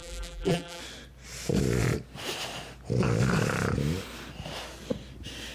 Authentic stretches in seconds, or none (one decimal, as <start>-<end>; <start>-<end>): 0.8-5.5